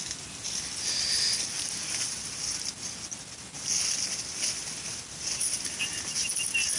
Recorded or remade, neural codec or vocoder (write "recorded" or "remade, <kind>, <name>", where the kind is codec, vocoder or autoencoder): recorded